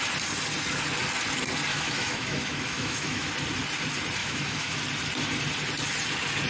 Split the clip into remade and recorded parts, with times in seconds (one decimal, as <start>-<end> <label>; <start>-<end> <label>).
0.0-1.7 recorded; 1.7-3.3 remade; 3.3-4.2 recorded; 4.2-4.8 remade; 4.8-6.5 recorded